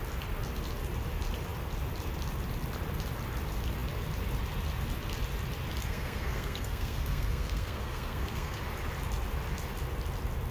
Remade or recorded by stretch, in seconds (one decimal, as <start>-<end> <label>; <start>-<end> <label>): 0.0-5.8 recorded; 5.8-8.6 remade; 8.6-10.5 recorded